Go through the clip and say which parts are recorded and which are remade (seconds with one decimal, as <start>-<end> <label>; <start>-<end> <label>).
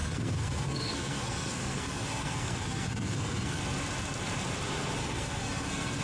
0.0-3.6 remade; 3.6-5.0 recorded; 5.0-6.0 remade